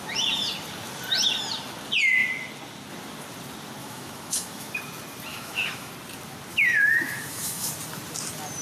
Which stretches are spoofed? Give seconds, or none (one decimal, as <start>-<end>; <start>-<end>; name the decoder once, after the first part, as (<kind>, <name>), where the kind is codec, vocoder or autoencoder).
3.8-4.7 (autoencoder, DAC-VAE); 5.3-5.9; 6.5-7.7